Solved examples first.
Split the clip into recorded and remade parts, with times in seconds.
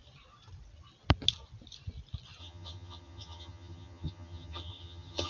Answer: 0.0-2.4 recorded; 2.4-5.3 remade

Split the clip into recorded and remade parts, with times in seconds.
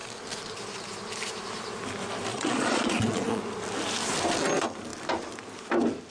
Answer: 0.0-2.3 recorded; 2.3-3.4 remade; 3.4-6.1 recorded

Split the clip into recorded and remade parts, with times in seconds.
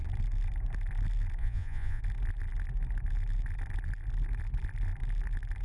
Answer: 0.0-1.4 recorded; 1.4-2.0 remade; 2.0-5.6 recorded